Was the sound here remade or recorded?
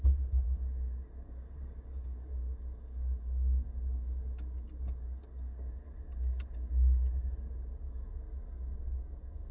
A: remade